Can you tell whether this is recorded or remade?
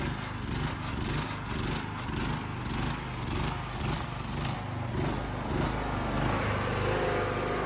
recorded